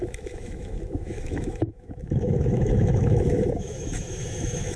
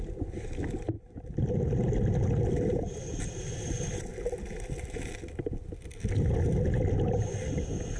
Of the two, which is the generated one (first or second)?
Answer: first